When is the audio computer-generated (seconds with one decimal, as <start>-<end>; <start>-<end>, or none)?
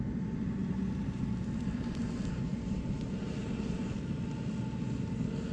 0.6-3.9